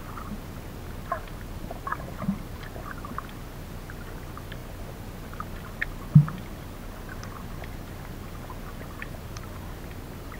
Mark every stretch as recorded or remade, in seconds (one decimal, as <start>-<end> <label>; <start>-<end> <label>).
0.0-10.4 recorded